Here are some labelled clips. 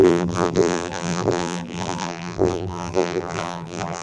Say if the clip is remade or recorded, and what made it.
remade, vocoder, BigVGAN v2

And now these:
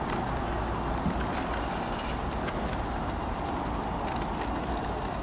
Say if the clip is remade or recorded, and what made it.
recorded